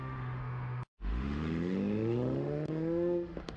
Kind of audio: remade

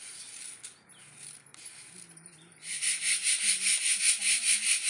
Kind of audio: recorded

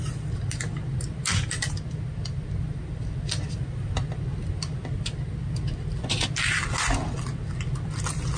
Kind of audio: recorded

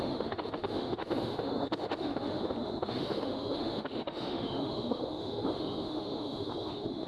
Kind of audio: remade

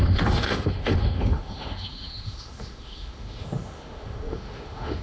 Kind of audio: remade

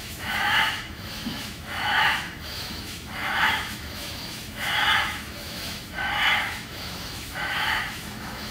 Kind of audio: remade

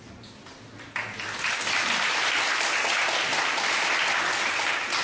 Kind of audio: recorded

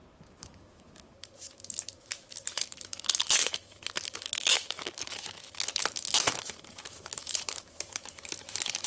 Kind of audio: remade